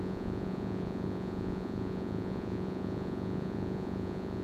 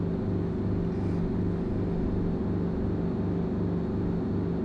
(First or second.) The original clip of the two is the second